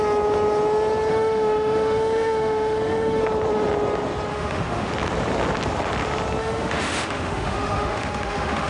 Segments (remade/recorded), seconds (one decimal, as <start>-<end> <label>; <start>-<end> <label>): 0.0-1.1 recorded; 1.1-3.2 remade; 3.2-4.3 recorded; 4.3-4.9 remade; 4.9-6.4 recorded; 6.4-8.7 remade